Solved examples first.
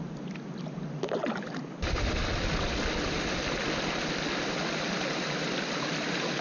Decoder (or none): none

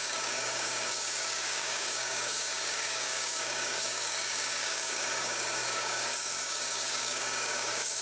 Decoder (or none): codec, DAC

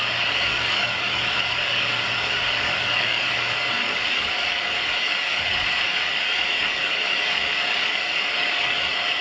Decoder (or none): codec, DAC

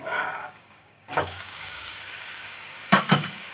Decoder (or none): codec, DAC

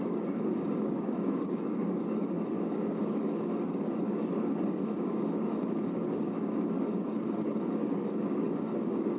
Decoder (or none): codec, DAC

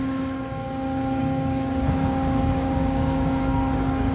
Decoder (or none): codec, DAC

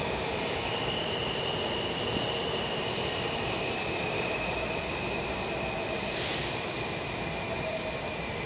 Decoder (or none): none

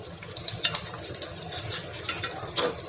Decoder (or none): none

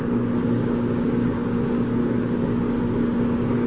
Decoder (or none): codec, DAC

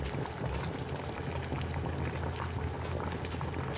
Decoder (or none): none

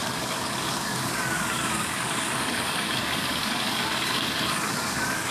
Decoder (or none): codec, DAC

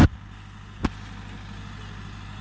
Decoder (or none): none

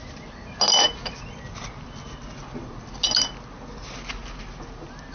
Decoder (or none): none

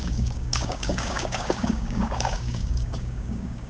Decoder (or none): codec, DAC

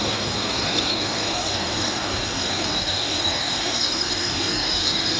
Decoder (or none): codec, DAC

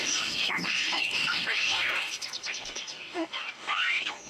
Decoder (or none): codec, DAC